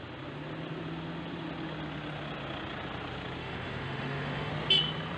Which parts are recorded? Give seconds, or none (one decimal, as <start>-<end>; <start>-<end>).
0.0-3.4; 4.5-5.2